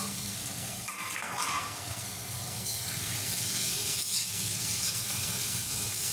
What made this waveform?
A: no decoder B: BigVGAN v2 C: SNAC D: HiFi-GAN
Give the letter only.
C